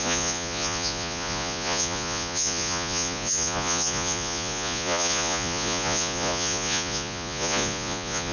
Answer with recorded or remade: remade